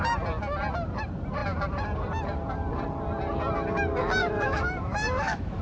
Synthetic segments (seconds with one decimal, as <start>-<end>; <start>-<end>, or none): 4.2-5.6